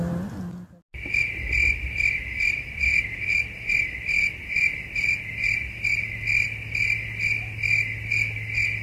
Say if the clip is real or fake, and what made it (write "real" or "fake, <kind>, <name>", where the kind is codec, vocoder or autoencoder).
real